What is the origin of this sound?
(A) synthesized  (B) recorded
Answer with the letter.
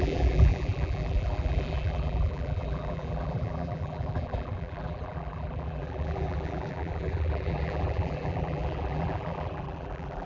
A